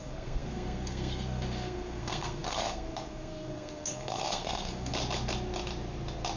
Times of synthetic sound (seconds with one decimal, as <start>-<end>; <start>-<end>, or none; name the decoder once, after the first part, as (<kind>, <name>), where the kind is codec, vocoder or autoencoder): 0.0-4.9 (codec, SNAC)